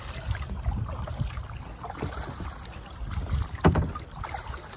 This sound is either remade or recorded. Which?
recorded